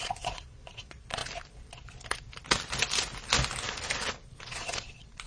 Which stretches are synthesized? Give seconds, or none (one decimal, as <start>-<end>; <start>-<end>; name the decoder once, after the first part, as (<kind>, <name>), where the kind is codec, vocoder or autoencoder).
0.0-1.2 (vocoder, Vocos); 4.4-5.3